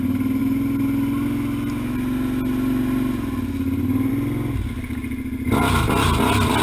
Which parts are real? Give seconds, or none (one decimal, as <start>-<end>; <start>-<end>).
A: 0.0-6.6